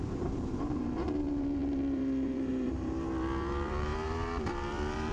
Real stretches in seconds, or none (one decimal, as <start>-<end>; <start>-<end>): none